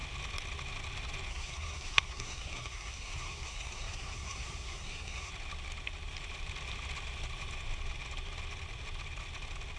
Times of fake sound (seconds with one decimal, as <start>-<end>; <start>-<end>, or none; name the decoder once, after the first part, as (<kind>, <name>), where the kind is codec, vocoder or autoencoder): 1.3-5.3 (codec, SNAC)